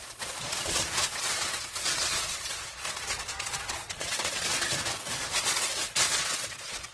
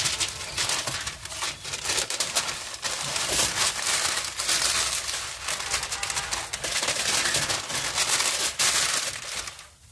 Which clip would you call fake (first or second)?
first